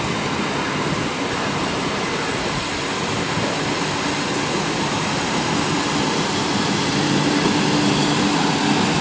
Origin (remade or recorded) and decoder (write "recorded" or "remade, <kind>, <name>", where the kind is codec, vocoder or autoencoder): recorded